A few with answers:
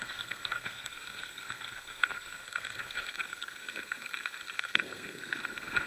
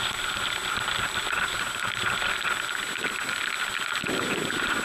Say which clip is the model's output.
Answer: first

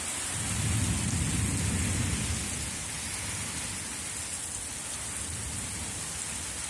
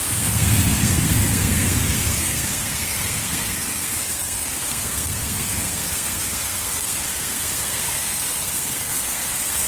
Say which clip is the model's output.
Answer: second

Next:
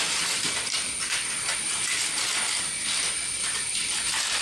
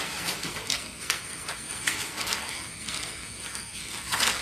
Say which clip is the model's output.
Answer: second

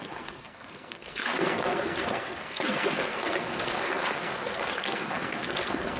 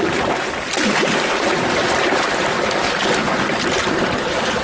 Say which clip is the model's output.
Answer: first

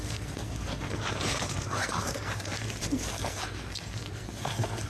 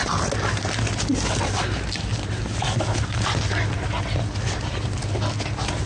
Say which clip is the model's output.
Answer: first